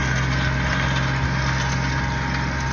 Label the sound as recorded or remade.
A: recorded